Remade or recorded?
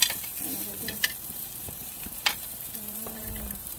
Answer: remade